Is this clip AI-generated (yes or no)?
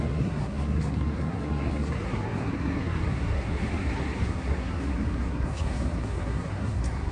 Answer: yes